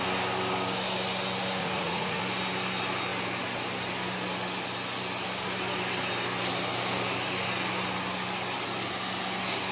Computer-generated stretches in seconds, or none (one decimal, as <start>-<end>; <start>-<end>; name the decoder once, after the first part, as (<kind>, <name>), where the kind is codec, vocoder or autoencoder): 1.6-2.2 (vocoder, Vocos)